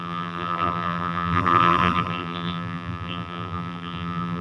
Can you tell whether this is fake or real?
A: fake